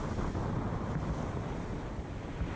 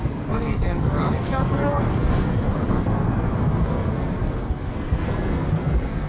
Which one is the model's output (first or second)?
second